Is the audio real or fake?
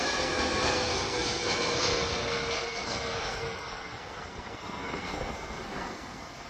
fake